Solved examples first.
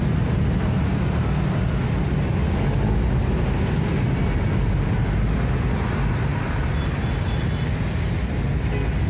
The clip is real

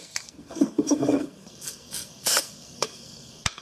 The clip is fake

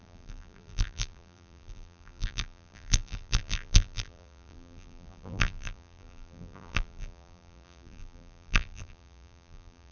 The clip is fake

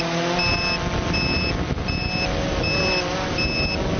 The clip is real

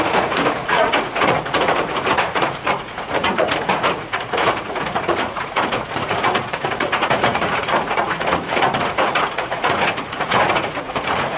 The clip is fake